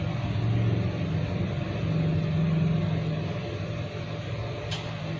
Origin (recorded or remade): recorded